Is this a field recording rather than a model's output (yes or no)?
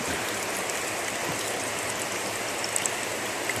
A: no